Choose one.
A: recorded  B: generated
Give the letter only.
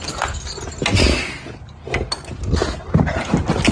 A